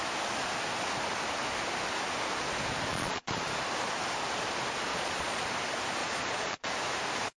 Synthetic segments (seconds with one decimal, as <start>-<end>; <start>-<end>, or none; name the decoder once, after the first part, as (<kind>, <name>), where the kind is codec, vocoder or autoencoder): 2.9-3.5 (vocoder, Vocos); 4.9-5.4; 6.0-6.7